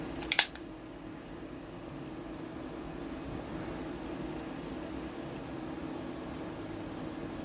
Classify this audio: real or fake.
real